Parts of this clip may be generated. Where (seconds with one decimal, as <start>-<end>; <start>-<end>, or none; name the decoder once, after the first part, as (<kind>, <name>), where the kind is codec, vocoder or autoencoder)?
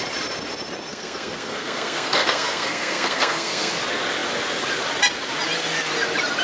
0.9-3.7 (codec, SNAC)